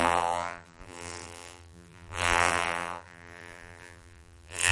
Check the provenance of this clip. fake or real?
fake